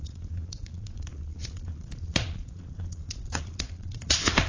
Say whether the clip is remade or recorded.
remade